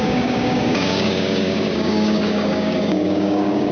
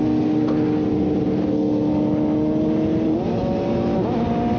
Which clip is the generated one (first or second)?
first